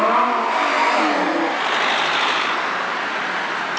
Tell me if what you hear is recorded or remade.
recorded